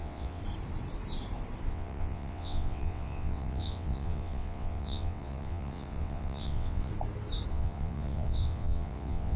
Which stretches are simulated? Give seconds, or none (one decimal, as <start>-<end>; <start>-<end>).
0.0-0.4; 1.7-6.9; 7.5-9.4